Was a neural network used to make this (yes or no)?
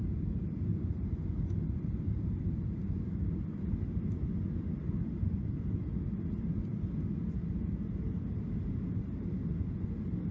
no